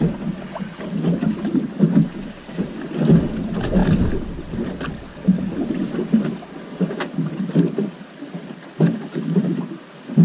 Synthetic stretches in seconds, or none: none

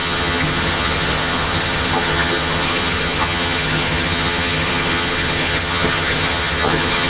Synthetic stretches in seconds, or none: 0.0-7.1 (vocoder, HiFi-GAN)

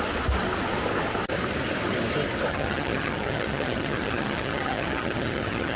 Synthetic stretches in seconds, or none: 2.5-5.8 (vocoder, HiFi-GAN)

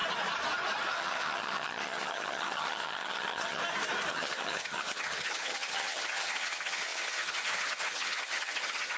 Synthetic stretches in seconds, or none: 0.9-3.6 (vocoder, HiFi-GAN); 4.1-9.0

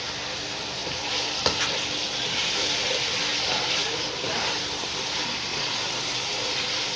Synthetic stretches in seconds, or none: none